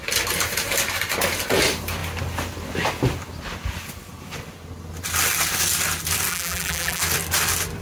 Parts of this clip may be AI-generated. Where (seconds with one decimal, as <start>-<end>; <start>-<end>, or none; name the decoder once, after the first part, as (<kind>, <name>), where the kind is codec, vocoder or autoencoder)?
6.3-7.0 (vocoder, BigVGAN v2)